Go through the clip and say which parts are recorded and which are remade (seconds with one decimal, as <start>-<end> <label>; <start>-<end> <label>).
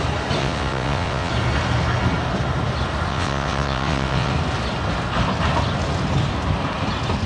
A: 0.0-0.4 recorded; 0.4-1.3 remade; 1.3-3.1 recorded; 3.1-4.3 remade; 4.3-7.3 recorded